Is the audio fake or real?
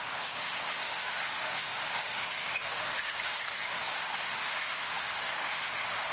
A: fake